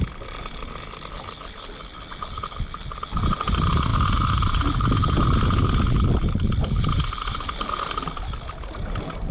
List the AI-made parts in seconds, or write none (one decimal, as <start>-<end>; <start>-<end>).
none

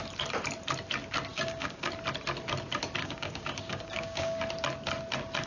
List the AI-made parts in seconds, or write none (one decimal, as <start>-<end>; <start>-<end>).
1.3-1.9; 3.0-4.4

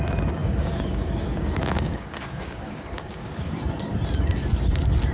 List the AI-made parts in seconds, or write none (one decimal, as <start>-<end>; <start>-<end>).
0.4-3.5

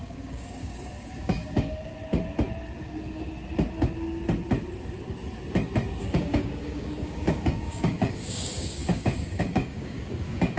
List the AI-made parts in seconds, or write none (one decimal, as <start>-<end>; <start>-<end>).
0.0-1.9; 6.0-10.6